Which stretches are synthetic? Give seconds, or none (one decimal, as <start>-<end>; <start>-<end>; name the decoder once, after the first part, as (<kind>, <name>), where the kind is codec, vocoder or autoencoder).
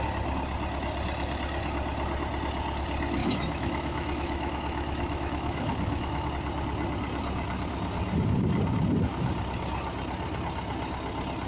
3.2-6.3 (autoencoder, DAC-VAE)